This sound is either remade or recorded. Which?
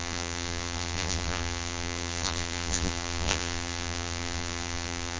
remade